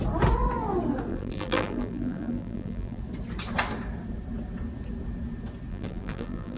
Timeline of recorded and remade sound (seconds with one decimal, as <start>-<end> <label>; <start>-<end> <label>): 0.0-1.1 recorded; 1.1-3.0 remade; 3.0-5.7 recorded; 5.7-6.6 remade